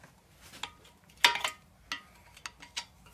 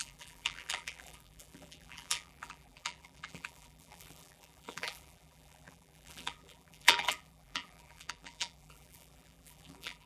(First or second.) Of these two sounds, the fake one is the second